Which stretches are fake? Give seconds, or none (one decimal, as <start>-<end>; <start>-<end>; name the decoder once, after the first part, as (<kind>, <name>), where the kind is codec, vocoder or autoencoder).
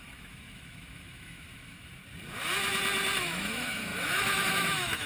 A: 0.0-2.0 (autoencoder, DAC-VAE); 3.2-5.1